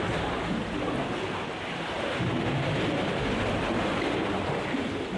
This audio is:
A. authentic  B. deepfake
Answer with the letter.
A